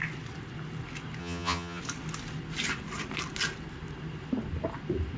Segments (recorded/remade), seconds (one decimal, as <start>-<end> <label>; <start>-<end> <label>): 0.0-1.2 recorded; 1.2-1.8 remade; 1.8-5.2 recorded

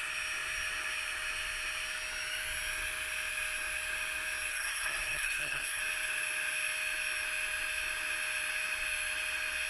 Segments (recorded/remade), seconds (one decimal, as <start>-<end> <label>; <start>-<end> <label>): 0.0-4.5 recorded; 4.5-5.8 remade; 5.8-9.7 recorded

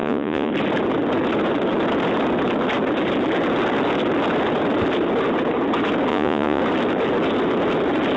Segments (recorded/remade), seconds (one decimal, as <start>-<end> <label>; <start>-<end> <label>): 0.0-0.5 remade; 0.5-6.1 recorded; 6.1-6.6 remade; 6.6-8.2 recorded